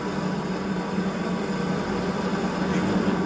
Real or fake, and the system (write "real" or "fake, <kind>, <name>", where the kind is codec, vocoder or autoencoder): real